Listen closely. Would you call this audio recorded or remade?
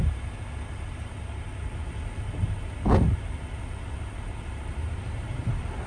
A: recorded